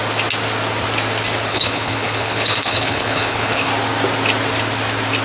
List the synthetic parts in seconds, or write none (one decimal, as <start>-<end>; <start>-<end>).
1.5-3.7